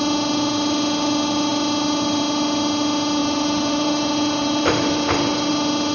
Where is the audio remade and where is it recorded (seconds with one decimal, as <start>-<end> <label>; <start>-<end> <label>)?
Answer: 0.0-3.2 recorded; 3.2-5.5 remade; 5.5-5.9 recorded